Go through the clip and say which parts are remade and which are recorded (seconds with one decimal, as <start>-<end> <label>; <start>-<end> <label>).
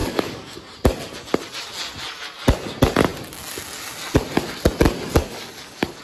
0.0-0.6 remade; 0.6-5.2 recorded; 5.2-6.0 remade